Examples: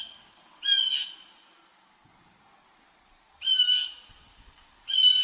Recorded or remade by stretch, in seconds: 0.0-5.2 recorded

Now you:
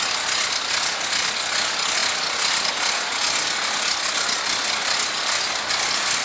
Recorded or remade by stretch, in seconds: 0.0-6.2 recorded

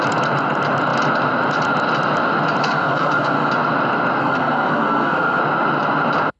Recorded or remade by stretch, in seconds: 0.0-2.6 recorded; 2.6-3.5 remade; 3.5-4.2 recorded; 4.2-5.4 remade; 5.4-6.4 recorded

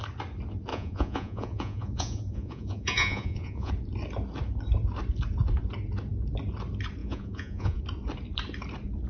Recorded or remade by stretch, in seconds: 0.0-0.7 recorded; 0.7-3.7 remade; 3.7-7.0 recorded; 7.0-7.8 remade; 7.8-9.1 recorded

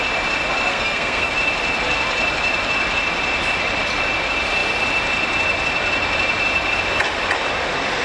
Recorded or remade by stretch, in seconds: 0.0-0.7 recorded; 0.7-1.3 remade; 1.3-8.0 recorded